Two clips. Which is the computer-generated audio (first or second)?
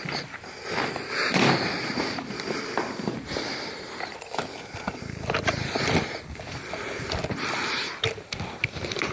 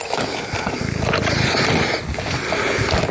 first